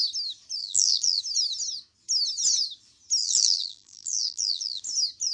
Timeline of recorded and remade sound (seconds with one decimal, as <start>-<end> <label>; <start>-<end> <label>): 0.0-0.6 recorded; 0.6-1.2 remade; 1.2-3.2 recorded; 3.2-4.8 remade; 4.8-5.3 recorded